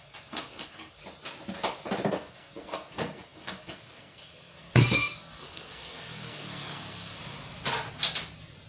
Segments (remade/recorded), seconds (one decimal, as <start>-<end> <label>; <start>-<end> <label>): 0.0-1.0 remade; 1.0-2.1 recorded; 2.1-7.2 remade; 7.2-8.7 recorded